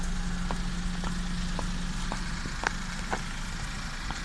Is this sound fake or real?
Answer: real